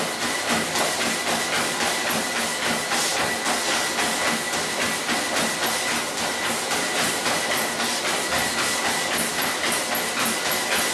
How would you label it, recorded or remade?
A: recorded